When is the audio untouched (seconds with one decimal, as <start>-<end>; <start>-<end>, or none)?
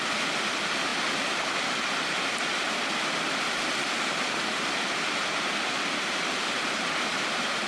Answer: 0.0-7.7